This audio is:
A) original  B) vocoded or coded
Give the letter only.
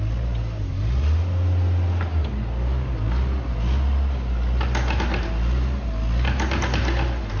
A